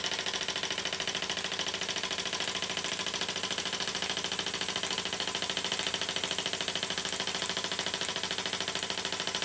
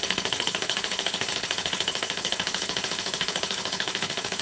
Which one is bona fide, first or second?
first